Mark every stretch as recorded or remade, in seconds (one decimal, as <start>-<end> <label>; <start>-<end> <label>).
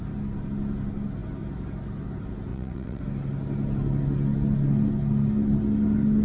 0.0-2.5 recorded; 2.5-3.0 remade; 3.0-6.2 recorded